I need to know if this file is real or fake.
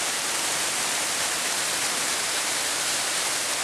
fake